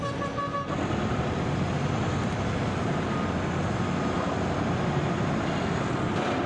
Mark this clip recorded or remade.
recorded